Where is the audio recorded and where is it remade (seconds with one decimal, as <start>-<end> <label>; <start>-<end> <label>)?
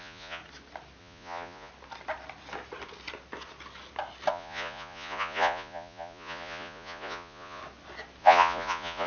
0.0-0.4 remade; 0.4-1.0 recorded; 1.0-1.7 remade; 1.7-4.3 recorded; 4.3-7.6 remade; 7.6-8.2 recorded; 8.2-9.1 remade